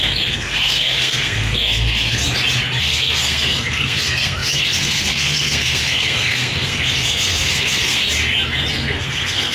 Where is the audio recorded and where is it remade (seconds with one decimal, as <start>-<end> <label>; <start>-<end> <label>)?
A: 0.0-2.2 remade; 2.2-2.8 recorded; 2.8-8.0 remade; 8.0-8.7 recorded; 8.7-9.5 remade